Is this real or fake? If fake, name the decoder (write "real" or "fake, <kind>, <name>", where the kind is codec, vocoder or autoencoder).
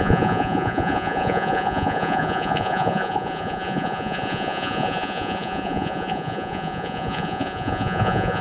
fake, vocoder, Vocos